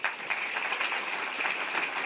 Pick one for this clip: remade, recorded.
recorded